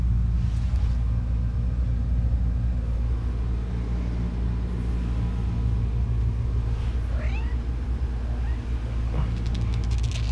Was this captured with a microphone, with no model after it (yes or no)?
yes